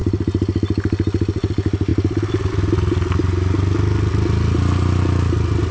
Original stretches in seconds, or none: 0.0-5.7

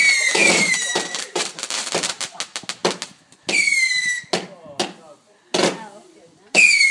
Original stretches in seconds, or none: 0.0-0.4; 2.1-6.9

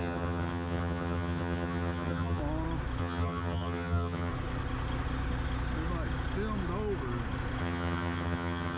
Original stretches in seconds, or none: 2.4-3.0; 4.3-7.6

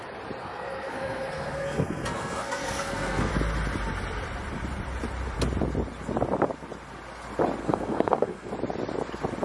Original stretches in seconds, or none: 0.0-0.4; 3.3-7.6; 8.5-9.4

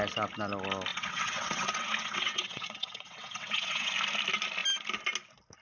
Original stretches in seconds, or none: 0.0-0.9; 3.9-5.6

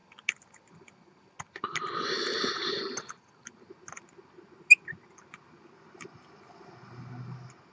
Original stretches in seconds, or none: 0.0-7.7

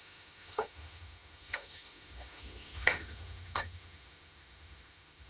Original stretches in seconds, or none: none

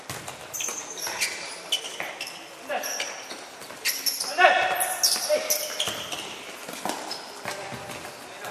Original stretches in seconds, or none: 0.0-8.5